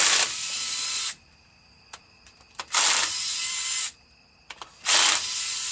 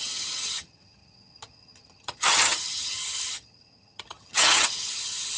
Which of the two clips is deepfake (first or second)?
second